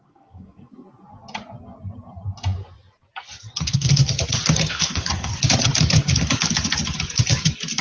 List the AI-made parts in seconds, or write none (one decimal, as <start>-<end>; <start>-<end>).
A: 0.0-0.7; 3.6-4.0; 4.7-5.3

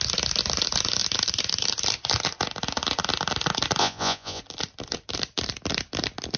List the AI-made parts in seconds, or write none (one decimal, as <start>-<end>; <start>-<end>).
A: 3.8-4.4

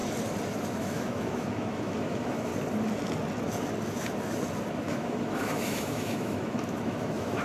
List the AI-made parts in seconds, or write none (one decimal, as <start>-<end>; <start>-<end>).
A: 0.8-2.5; 4.7-7.4